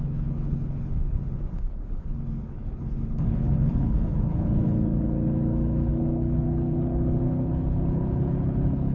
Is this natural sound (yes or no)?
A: no